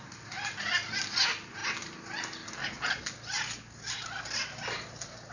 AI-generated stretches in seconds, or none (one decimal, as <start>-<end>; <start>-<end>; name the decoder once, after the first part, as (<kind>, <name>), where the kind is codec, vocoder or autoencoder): none